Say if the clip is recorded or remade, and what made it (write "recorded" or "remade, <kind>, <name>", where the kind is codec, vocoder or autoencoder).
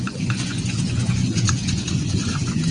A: remade, vocoder, Vocos